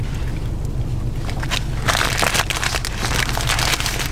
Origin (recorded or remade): recorded